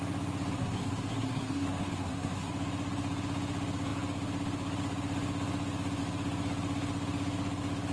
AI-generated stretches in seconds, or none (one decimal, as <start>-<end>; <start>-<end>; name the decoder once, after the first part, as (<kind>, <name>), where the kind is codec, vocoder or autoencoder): 0.6-2.5 (codec, SNAC)